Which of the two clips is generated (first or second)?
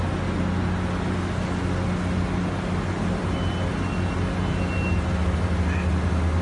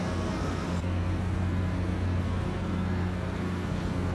second